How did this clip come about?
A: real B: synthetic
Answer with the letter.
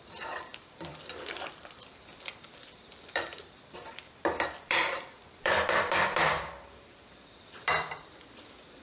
B